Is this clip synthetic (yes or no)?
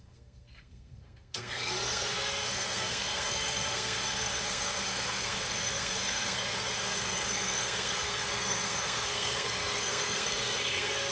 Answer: yes